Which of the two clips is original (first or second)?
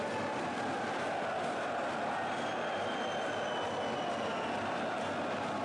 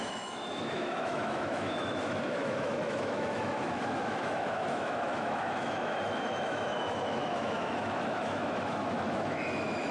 first